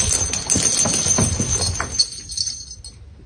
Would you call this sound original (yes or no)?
yes